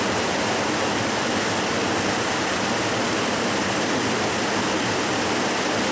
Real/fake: real